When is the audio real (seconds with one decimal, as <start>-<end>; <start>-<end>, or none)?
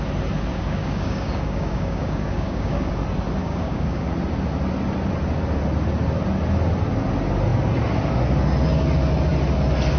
0.0-0.5; 2.9-3.4; 4.1-10.0